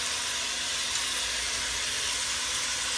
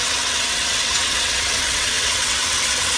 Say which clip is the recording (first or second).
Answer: first